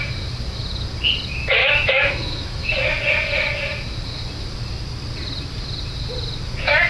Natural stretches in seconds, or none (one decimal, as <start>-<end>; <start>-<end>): 0.0-1.6; 2.7-6.9